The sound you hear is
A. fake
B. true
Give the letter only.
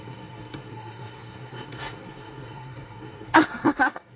A